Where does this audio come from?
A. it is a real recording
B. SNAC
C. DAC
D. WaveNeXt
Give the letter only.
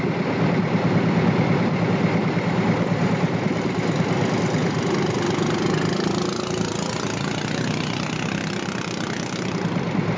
A